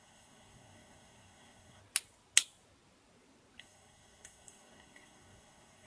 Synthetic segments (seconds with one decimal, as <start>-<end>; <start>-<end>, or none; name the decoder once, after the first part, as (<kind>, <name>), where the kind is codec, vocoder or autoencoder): 0.0-1.8 (codec, SNAC); 3.6-5.9